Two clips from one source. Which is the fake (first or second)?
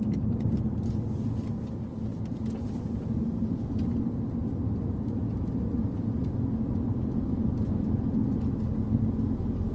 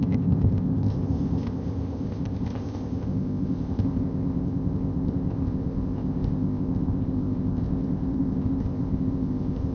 second